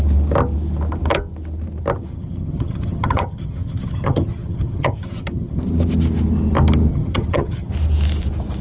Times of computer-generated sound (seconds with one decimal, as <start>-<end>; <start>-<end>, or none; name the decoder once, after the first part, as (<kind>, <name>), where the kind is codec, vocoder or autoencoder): 2.1-5.6 (vocoder, HiFi-GAN); 6.9-7.7